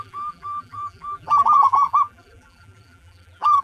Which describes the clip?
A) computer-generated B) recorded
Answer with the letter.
A